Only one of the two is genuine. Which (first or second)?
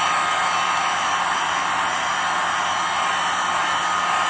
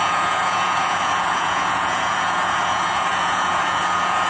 first